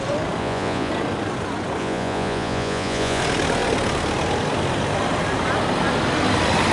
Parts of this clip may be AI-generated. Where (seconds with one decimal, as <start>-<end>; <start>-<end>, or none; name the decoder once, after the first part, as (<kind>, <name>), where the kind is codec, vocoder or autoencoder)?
0.4-0.9 (vocoder, Vocos); 1.8-3.2